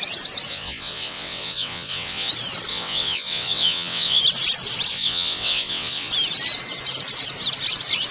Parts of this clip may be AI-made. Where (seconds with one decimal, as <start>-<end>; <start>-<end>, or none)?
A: 0.5-2.3; 2.7-4.2; 4.9-6.1